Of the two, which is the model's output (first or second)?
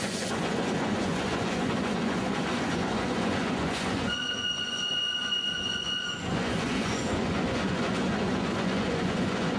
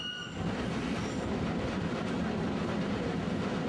first